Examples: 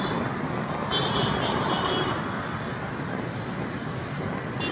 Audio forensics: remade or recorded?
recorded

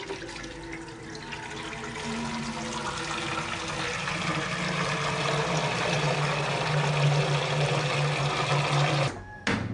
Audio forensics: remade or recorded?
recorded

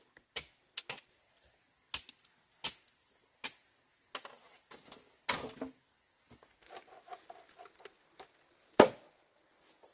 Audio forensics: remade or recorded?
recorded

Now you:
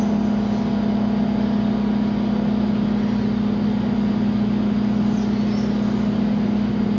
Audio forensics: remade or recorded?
recorded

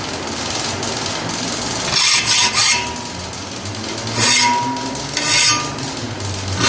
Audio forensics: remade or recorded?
recorded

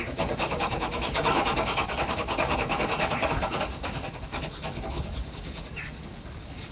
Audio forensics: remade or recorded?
remade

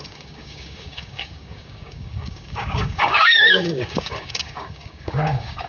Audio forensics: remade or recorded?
remade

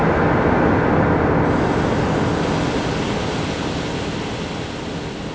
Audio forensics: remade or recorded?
recorded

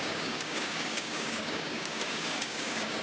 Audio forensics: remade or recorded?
remade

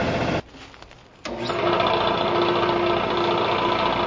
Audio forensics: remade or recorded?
recorded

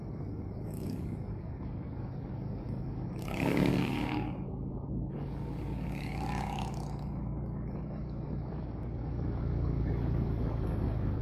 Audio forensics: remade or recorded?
remade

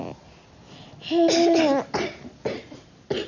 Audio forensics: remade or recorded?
recorded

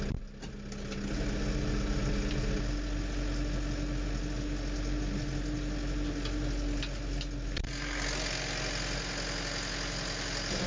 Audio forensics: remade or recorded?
recorded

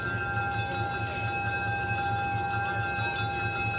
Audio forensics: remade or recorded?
recorded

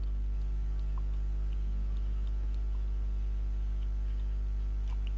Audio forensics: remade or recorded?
recorded